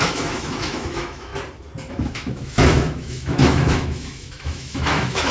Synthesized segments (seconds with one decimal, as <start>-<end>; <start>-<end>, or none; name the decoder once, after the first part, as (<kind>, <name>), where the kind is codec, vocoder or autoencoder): 0.0-1.3 (autoencoder, DAC-VAE); 1.9-5.3